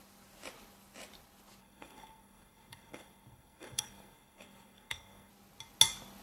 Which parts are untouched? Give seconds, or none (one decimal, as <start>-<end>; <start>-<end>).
0.0-1.6; 5.3-6.2